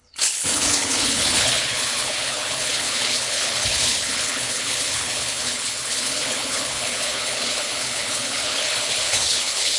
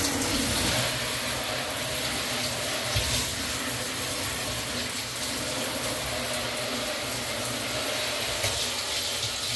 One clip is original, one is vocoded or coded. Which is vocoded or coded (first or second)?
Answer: first